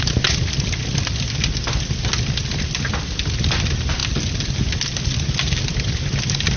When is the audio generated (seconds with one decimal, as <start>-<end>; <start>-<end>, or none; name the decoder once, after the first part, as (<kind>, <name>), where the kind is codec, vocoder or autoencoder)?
none